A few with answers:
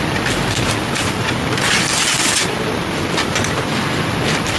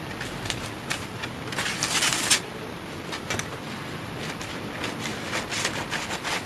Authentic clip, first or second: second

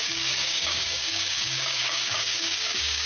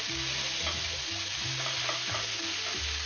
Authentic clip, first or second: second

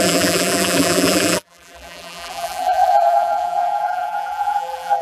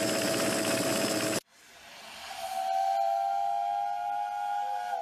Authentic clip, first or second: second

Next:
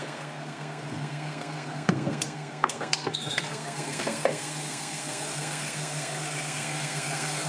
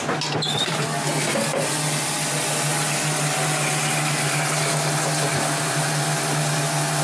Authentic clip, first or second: second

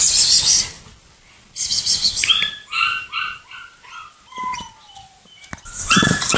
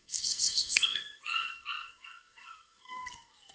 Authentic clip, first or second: first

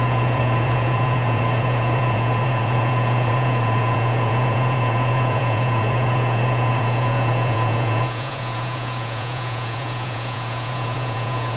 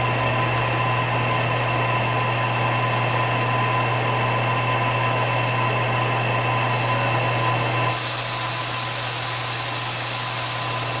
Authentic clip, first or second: second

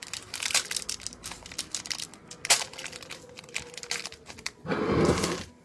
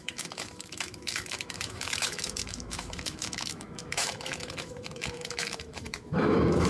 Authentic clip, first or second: first